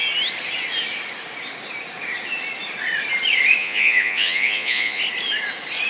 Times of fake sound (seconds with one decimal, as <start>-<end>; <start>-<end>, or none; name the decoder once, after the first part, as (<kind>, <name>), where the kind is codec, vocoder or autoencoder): 3.6-5.0 (vocoder, Vocos)